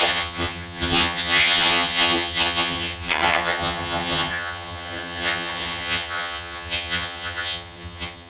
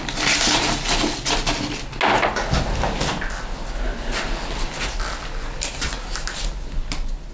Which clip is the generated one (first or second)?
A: first